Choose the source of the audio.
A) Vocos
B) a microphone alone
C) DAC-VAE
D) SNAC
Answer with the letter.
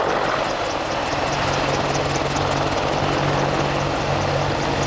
B